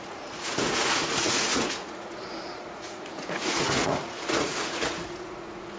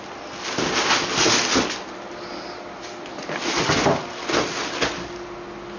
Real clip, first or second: second